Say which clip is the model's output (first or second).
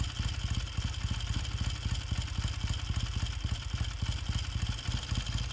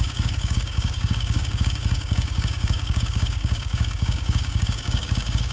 second